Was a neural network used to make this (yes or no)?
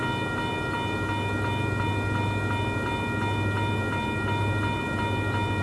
no